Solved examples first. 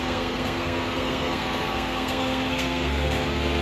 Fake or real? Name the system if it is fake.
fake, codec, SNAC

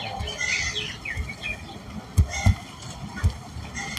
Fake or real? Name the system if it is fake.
real